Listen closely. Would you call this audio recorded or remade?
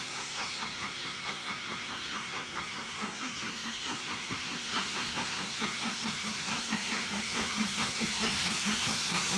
remade